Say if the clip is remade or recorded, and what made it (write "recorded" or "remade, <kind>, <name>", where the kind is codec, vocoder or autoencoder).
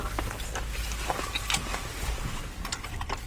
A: recorded